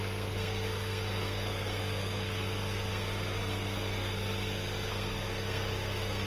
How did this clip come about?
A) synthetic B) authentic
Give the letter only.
A